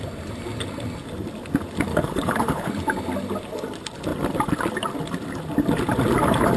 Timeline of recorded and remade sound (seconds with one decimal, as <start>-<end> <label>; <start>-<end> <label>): 0.0-1.9 recorded; 1.9-2.7 remade; 2.7-6.6 recorded